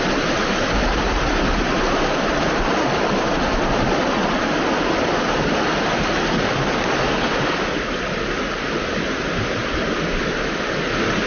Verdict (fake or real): real